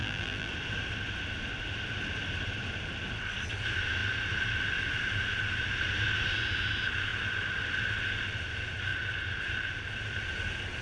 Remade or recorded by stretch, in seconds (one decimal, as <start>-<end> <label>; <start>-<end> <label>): 0.0-0.5 remade; 0.5-10.8 recorded